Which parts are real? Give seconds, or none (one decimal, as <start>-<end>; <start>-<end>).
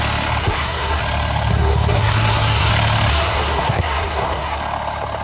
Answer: 0.0-0.4; 1.0-1.5; 2.7-3.1; 4.6-5.2